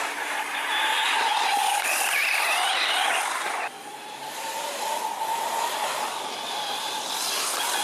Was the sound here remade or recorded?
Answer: remade